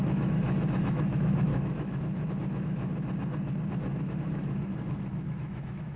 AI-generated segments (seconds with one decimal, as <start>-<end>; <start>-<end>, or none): 0.0-2.9; 3.7-6.0